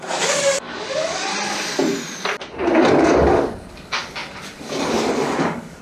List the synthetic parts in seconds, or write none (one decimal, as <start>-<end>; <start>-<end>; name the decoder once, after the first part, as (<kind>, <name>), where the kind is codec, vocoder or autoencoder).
0.0-1.3 (codec, DAC); 2.9-5.8